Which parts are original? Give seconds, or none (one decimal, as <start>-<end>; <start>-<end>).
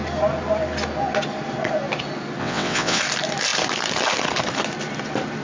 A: 0.0-2.4; 3.0-5.4